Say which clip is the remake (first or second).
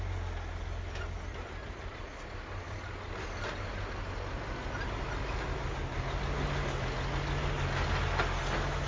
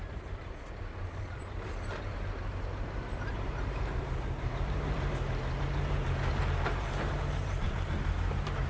second